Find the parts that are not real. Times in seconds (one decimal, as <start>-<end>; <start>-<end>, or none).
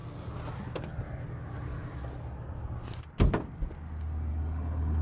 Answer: 4.3-5.0